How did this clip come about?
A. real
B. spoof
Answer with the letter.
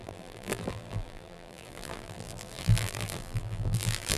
B